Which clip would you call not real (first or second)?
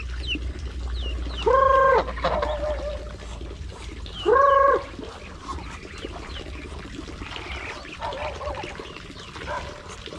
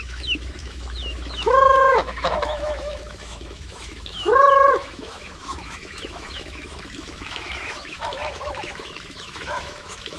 second